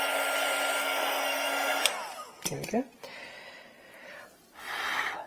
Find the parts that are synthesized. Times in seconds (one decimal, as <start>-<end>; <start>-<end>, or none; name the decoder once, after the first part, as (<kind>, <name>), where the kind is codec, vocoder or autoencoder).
0.8-1.8 (codec, SNAC)